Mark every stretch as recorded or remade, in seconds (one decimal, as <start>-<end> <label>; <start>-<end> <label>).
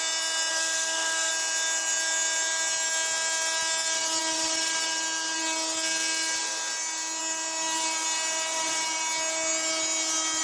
0.0-0.5 recorded; 0.5-1.3 remade; 1.3-10.4 recorded